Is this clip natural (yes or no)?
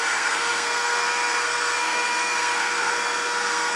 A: no